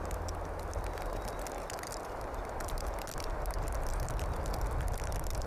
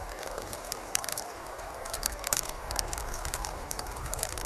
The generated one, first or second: second